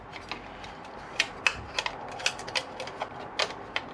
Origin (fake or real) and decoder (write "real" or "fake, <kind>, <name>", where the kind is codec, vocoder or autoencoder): real